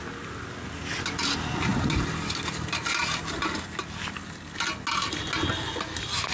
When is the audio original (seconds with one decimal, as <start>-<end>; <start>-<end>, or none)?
0.0-6.3